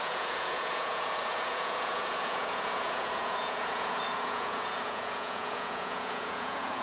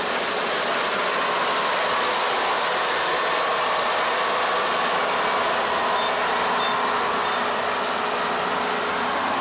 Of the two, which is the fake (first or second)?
first